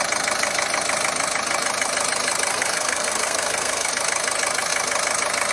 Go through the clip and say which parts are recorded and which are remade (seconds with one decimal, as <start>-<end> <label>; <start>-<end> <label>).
0.0-2.5 recorded; 2.5-3.9 remade; 3.9-5.5 recorded